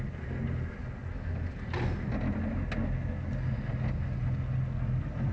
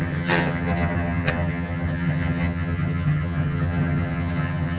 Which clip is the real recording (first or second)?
first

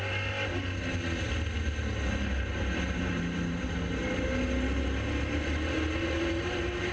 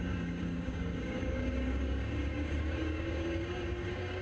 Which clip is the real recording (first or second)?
first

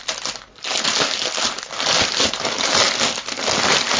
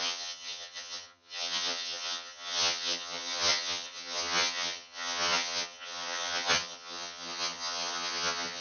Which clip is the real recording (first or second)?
first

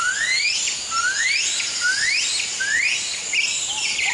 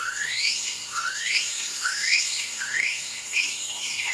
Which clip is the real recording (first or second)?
first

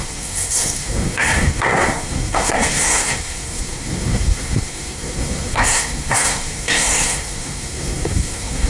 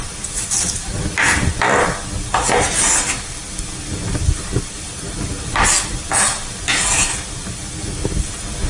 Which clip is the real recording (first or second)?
second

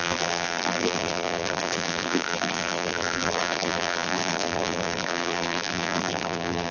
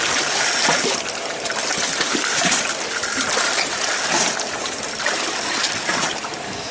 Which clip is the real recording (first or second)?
second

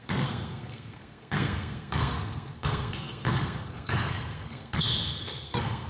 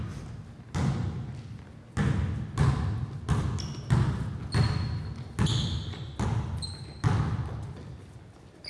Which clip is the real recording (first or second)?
second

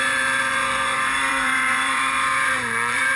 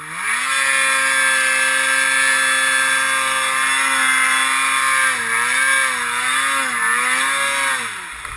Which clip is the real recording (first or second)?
second